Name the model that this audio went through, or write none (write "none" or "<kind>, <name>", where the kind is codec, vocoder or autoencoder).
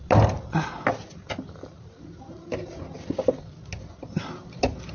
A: none